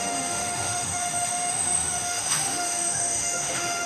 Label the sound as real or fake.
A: fake